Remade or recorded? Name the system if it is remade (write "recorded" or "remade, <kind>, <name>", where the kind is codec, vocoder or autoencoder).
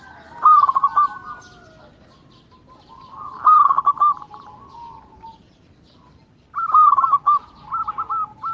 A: recorded